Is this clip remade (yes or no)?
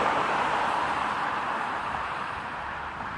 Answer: yes